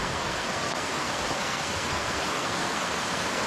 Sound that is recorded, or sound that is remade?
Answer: remade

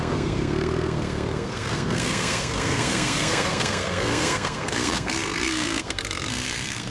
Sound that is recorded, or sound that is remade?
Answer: remade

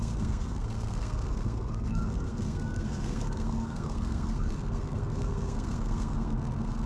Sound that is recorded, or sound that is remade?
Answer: remade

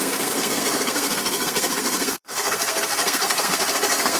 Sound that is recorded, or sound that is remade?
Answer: remade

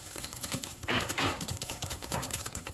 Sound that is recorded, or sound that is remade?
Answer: remade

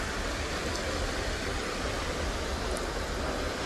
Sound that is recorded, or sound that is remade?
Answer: recorded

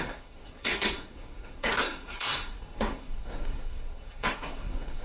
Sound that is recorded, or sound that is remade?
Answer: remade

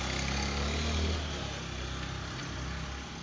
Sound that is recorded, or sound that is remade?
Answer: recorded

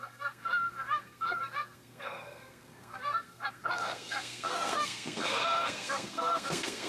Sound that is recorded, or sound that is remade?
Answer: remade